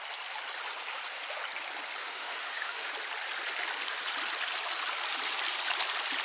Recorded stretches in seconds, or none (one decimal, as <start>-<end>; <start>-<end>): 0.0-2.0; 2.9-6.2